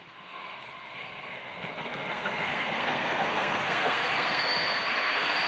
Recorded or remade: remade